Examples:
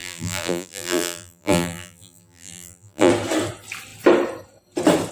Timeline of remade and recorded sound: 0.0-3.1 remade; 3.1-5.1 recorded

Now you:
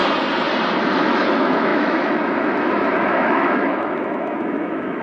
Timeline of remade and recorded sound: 0.0-1.0 recorded; 1.0-5.0 remade

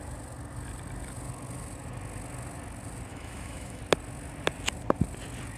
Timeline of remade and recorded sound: 0.0-3.1 recorded; 3.1-3.8 remade; 3.8-5.6 recorded

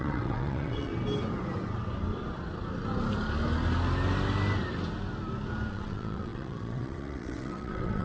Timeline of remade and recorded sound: 0.0-0.9 remade; 0.9-5.7 recorded; 5.7-8.0 remade

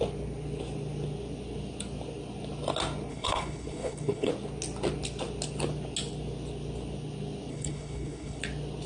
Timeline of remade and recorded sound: 0.0-3.1 recorded; 3.1-4.3 remade; 4.3-7.5 recorded; 7.5-8.4 remade; 8.4-8.9 recorded

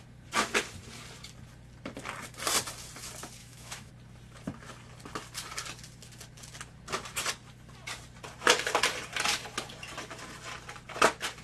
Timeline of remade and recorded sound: 0.0-3.4 recorded; 3.4-3.9 remade; 3.9-11.4 recorded

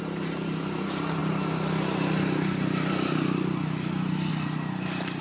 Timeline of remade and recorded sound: 0.0-5.2 recorded

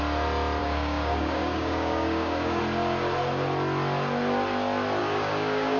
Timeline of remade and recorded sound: 0.0-0.6 recorded; 0.6-2.6 remade; 2.6-5.0 recorded; 5.0-5.8 remade